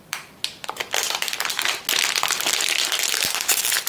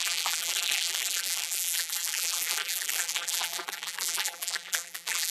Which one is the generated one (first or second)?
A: second